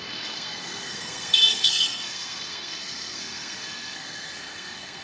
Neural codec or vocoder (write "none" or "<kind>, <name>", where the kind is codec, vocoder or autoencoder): codec, SNAC